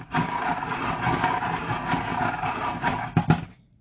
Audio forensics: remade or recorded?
recorded